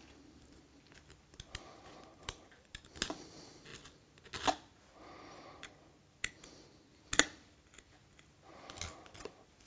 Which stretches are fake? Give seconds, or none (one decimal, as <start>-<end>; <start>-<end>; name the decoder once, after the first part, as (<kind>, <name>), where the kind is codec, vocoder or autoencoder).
2.1-2.7 (vocoder, BigVGAN v2)